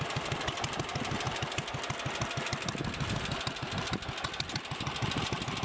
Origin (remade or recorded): recorded